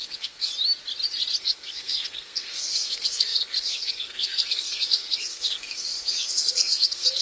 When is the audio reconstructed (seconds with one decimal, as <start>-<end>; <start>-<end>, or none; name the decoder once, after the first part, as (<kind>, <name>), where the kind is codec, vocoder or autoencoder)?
0.0-0.5 (codec, SNAC); 1.4-7.2